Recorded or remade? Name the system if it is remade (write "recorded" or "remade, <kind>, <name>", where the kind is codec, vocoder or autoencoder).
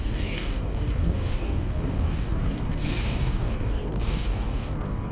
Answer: remade, codec, DAC